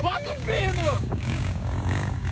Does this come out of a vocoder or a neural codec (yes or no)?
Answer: yes